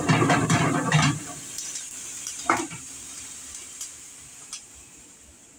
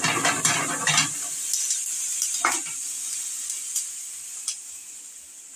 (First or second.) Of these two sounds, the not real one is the first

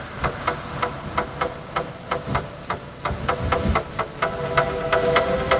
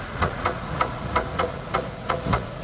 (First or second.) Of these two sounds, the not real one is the second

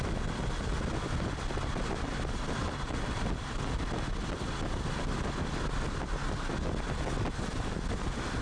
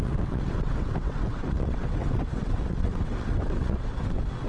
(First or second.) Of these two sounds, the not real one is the second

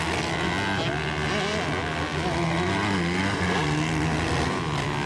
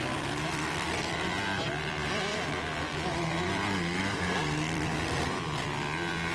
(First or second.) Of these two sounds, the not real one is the second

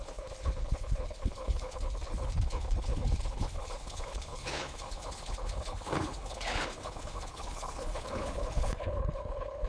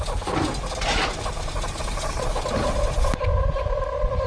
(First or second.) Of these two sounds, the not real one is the first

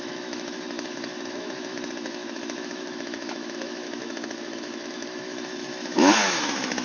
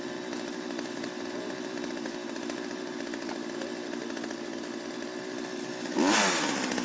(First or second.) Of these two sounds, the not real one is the first